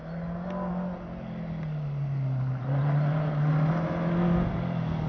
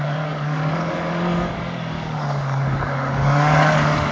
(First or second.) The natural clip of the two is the first